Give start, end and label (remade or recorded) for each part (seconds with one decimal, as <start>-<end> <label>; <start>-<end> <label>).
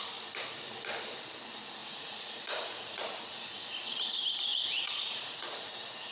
0.0-1.8 recorded; 1.8-3.0 remade; 3.0-4.5 recorded; 4.5-6.1 remade